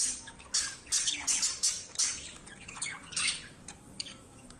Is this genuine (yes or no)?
no